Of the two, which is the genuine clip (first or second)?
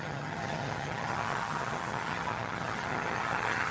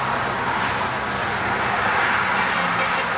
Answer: second